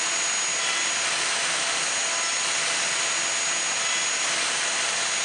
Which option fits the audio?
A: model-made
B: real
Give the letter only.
B